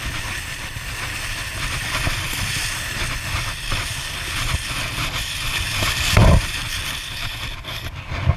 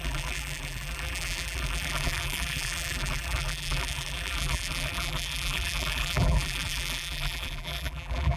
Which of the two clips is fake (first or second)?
second